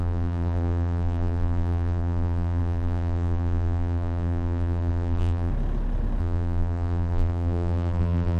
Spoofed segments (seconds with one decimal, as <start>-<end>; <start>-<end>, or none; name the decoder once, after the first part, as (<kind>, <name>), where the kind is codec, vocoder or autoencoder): 0.0-5.5 (vocoder, BigVGAN v2); 6.2-8.4

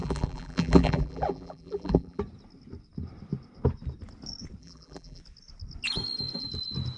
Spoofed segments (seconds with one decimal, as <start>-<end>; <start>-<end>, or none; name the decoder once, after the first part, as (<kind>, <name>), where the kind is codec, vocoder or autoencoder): 0.0-2.2 (vocoder, BigVGAN v2); 4.6-5.2

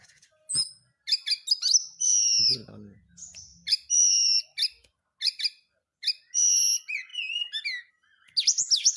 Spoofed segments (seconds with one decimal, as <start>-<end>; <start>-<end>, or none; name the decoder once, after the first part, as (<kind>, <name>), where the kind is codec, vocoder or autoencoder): none

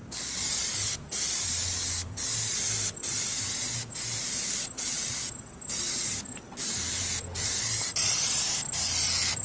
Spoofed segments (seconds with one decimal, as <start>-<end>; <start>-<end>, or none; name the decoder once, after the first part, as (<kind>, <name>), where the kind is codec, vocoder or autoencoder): 6.1-6.6 (vocoder, BigVGAN v2)

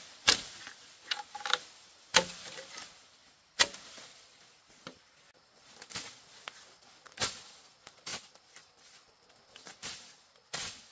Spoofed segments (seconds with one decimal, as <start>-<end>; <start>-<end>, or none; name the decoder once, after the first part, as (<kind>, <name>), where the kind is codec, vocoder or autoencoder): 8.1-9.2 (vocoder, BigVGAN v2); 9.8-10.9

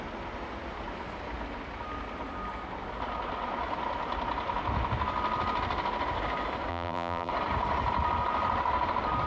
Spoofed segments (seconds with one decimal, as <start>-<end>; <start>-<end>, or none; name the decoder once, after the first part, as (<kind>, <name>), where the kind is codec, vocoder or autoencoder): 6.7-7.3 (vocoder, BigVGAN v2)

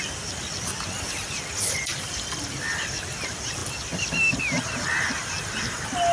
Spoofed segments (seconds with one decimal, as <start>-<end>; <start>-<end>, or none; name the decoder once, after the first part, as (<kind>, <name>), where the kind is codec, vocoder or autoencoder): 1.9-2.9 (vocoder, BigVGAN v2)